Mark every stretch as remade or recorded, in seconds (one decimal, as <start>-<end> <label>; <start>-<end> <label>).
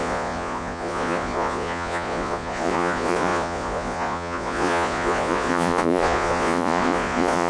0.0-7.5 remade